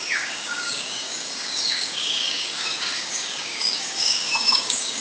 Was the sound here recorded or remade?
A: remade